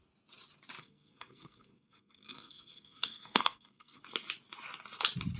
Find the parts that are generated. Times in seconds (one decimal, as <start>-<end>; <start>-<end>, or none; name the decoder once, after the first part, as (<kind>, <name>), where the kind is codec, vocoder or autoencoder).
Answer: 0.8-4.0 (codec, SNAC)